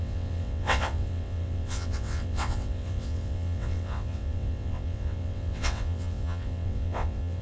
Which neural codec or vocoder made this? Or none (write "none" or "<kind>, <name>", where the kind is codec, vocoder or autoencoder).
vocoder, WaveNeXt